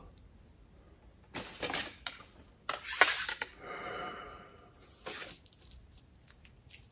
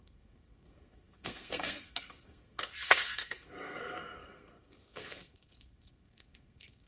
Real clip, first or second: first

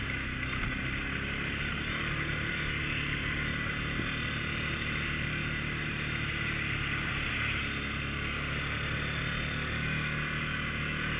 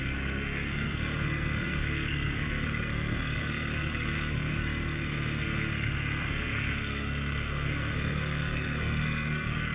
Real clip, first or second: first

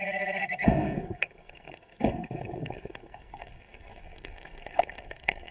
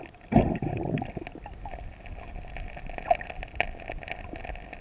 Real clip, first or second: second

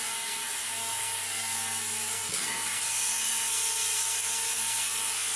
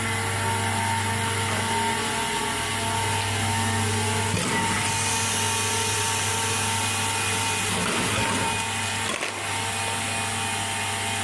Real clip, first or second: second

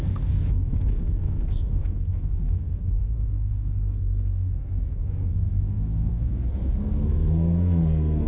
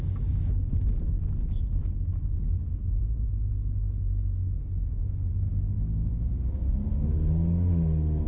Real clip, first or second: second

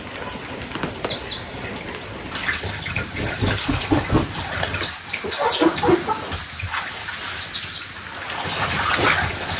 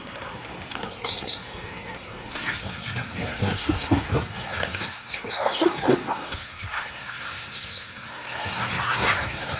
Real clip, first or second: first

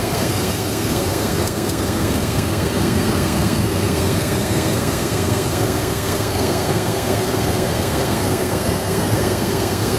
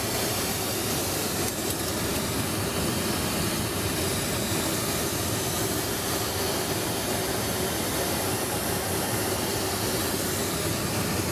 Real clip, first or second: second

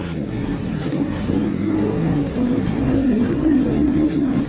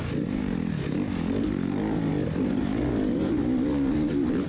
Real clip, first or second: second